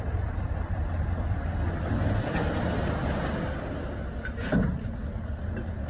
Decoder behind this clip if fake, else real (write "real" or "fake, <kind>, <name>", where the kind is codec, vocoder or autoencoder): real